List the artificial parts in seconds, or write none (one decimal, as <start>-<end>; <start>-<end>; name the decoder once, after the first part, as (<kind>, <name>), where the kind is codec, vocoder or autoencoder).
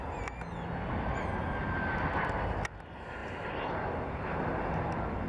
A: none